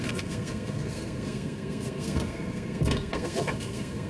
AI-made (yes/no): yes